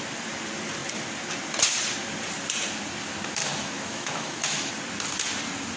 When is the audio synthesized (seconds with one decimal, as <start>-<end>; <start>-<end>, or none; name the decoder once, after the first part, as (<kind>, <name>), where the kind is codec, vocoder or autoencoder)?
3.4-4.7 (autoencoder, DAC-VAE)